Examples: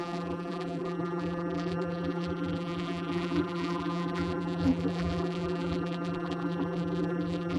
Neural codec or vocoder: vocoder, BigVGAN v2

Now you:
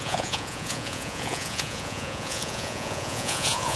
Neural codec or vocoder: vocoder, Vocos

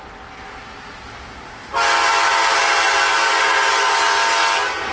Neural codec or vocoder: none